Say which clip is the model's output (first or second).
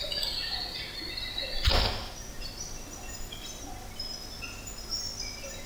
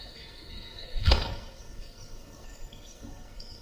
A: second